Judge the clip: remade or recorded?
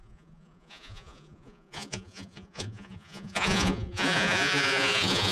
remade